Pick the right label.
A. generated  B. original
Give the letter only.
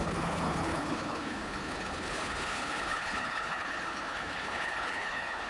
A